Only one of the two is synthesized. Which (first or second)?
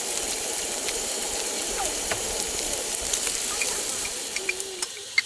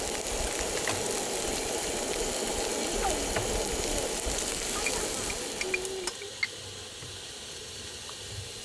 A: first